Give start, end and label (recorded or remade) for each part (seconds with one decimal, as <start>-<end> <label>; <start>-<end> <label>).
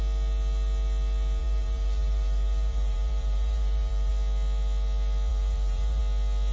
0.0-1.4 recorded; 1.4-4.1 remade; 4.1-5.3 recorded; 5.3-6.0 remade; 6.0-6.5 recorded